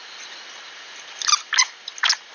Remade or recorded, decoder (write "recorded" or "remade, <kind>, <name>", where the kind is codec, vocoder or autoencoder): recorded